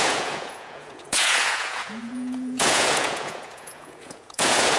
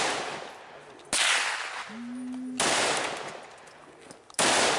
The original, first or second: second